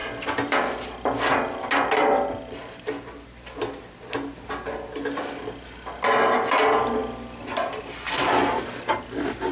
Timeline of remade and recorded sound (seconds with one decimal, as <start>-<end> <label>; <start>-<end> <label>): 0.0-9.5 recorded